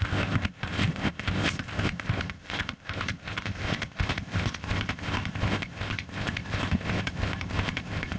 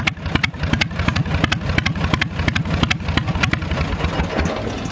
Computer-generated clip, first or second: first